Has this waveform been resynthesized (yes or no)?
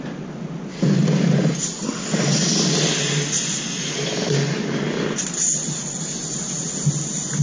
no